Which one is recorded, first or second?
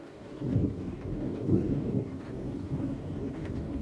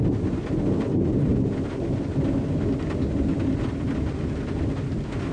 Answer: second